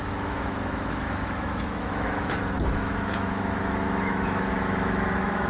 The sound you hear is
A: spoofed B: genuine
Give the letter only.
A